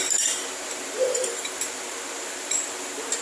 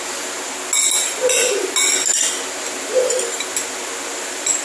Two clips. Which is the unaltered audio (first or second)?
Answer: second